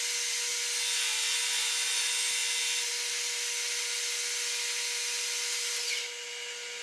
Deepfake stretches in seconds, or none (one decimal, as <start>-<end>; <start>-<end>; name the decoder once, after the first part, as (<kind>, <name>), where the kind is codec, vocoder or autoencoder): none